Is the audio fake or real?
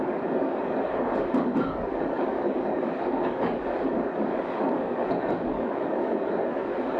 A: fake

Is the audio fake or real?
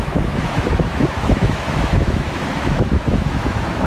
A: fake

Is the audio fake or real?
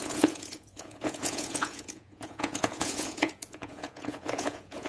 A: fake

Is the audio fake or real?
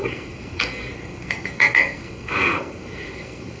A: fake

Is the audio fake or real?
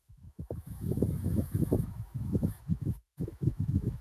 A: fake